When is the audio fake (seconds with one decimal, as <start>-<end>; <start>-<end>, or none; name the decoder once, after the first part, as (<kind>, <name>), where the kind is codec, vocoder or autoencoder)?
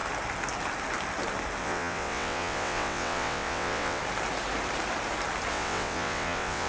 1.6-4.0 (vocoder, WaveNeXt); 5.5-6.7